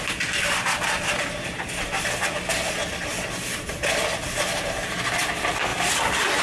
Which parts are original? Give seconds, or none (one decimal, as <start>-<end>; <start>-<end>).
0.0-6.4